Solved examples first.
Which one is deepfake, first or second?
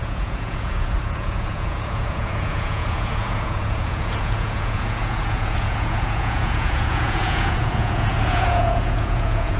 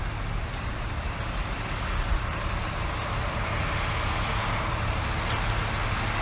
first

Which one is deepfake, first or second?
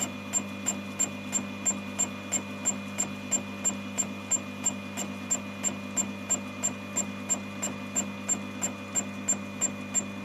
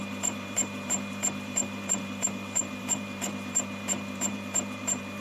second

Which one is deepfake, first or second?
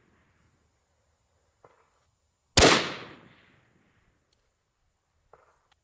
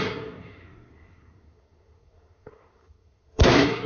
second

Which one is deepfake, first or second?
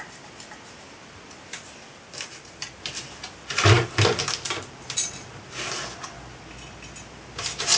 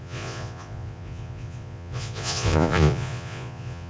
second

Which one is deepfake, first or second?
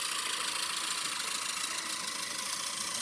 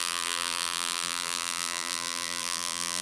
second